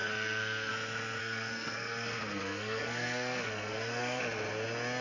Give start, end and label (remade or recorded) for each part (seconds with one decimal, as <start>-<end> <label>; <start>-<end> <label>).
0.0-0.7 remade; 0.7-1.2 recorded; 1.2-4.2 remade; 4.2-5.0 recorded